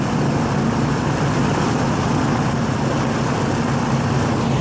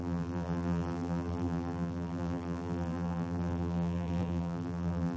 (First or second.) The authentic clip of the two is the first